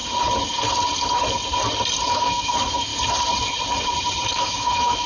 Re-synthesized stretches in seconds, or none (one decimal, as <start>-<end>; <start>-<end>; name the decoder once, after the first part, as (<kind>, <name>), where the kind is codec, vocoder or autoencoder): 2.1-2.9 (autoencoder, DAC-VAE); 4.3-5.1